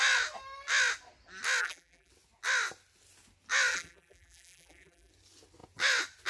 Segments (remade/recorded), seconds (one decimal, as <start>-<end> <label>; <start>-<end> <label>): 0.0-1.6 recorded; 1.6-2.1 remade; 2.1-3.7 recorded; 3.7-5.1 remade; 5.1-6.3 recorded